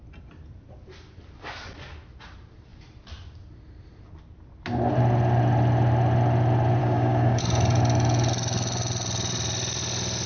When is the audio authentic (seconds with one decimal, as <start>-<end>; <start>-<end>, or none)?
0.0-6.8; 7.4-10.3